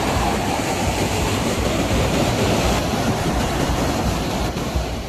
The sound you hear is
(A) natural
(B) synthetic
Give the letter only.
B